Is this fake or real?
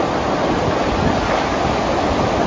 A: real